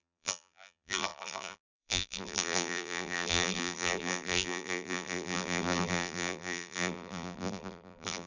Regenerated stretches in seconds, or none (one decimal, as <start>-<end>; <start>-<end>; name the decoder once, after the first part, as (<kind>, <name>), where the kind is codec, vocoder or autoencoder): 0.0-8.3 (vocoder, BigVGAN v2)